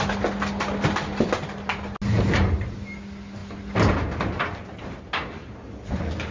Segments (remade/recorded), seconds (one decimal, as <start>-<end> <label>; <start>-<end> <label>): 0.0-6.3 recorded